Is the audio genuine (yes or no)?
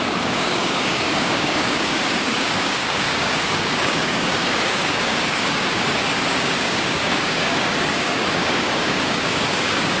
no